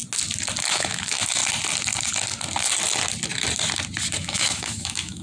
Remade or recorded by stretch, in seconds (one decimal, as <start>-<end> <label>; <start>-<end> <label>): 0.0-0.7 recorded; 0.7-1.4 remade; 1.4-4.2 recorded; 4.2-5.2 remade